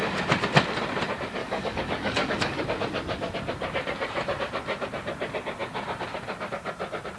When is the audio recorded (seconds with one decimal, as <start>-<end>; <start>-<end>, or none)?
0.0-1.4; 2.6-7.2